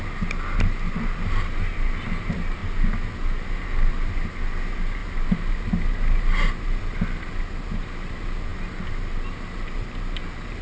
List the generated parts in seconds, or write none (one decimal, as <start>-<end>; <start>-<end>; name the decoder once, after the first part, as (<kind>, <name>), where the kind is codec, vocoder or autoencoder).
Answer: none